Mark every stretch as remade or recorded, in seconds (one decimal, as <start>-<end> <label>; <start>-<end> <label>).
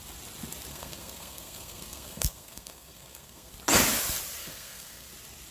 0.0-0.7 recorded; 0.7-3.5 remade; 3.5-4.4 recorded; 4.4-5.1 remade; 5.1-5.5 recorded